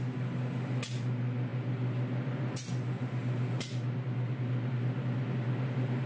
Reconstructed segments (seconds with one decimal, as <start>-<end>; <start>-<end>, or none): none